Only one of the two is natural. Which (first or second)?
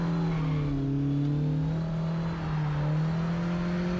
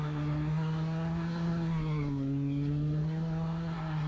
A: first